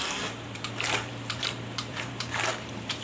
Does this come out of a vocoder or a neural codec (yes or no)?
yes